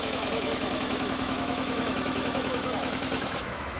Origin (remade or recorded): remade